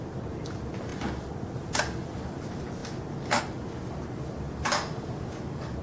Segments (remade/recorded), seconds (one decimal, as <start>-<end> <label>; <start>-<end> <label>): 0.0-5.8 recorded